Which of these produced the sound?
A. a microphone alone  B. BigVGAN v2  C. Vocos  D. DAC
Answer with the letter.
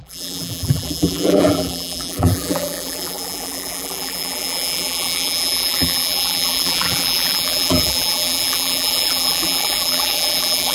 B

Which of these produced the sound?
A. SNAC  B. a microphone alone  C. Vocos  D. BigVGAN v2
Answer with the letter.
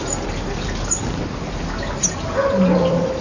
B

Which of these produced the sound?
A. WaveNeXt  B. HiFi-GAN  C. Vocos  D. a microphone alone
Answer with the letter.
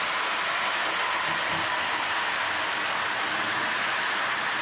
D